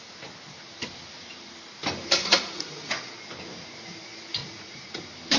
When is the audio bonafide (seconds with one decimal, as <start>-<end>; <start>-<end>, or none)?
0.0-2.2; 3.1-4.4; 5.0-5.4